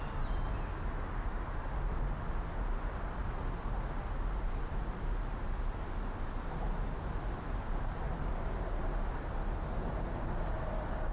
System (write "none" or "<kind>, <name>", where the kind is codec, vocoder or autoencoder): none